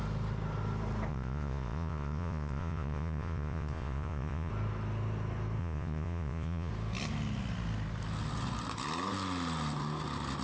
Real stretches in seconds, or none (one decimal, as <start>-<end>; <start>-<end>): 0.0-1.1; 4.5-5.6; 6.7-10.4